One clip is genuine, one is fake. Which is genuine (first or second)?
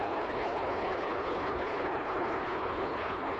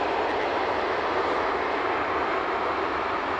second